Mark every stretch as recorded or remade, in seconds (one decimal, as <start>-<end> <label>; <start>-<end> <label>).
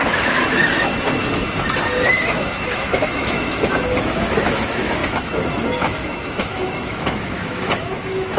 0.0-0.9 remade; 0.9-2.1 recorded; 2.1-8.4 remade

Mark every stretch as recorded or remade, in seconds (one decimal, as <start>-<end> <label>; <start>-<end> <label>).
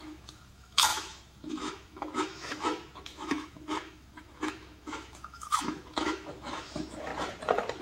0.0-7.1 remade; 7.1-7.8 recorded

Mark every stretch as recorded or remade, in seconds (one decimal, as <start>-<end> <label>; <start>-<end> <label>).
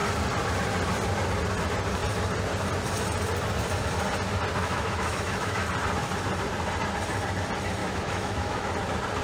0.0-4.6 recorded; 4.6-5.7 remade; 5.7-7.8 recorded; 7.8-8.7 remade; 8.7-9.2 recorded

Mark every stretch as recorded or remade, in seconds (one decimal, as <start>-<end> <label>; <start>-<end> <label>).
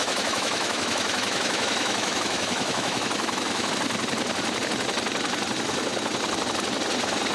0.0-3.7 remade; 3.7-7.3 recorded